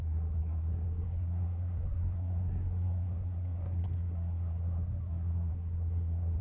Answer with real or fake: fake